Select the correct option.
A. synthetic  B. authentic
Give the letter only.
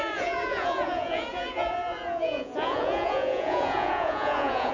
A